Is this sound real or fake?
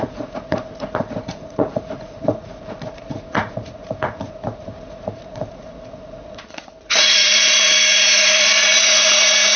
fake